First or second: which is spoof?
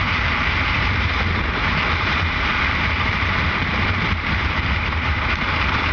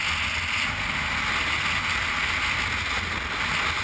first